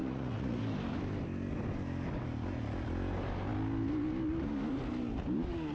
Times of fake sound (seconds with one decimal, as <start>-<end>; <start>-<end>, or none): 0.0-0.6